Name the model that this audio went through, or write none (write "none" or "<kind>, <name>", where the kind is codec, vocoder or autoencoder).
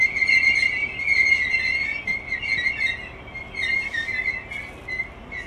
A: none